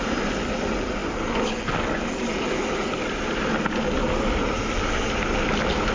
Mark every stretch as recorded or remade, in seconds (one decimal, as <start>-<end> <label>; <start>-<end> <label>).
0.0-5.9 recorded